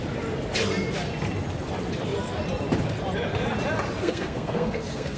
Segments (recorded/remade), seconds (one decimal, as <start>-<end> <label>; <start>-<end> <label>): 0.0-4.0 recorded; 4.0-5.2 remade

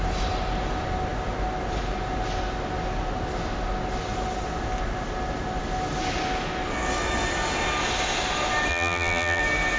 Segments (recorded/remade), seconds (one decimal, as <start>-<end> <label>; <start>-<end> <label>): 0.0-8.7 recorded; 8.7-9.4 remade; 9.4-9.8 recorded

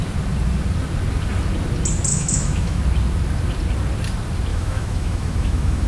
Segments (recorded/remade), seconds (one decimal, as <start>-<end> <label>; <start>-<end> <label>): 0.0-2.1 recorded; 2.1-2.8 remade; 2.8-4.5 recorded; 4.5-5.9 remade